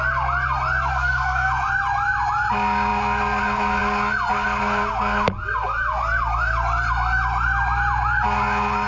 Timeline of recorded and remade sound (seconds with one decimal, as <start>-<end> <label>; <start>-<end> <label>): 0.0-0.9 recorded; 0.9-1.5 remade; 1.5-8.9 recorded